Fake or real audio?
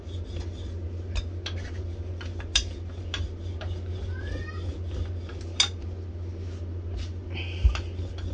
real